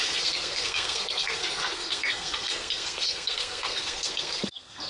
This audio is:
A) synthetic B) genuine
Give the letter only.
A